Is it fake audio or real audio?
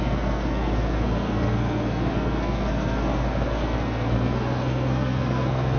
fake